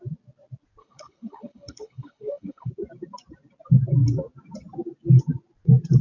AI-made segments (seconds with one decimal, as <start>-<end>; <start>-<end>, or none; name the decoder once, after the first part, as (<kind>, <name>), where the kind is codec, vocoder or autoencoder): 0.8-2.7 (codec, HILCodec)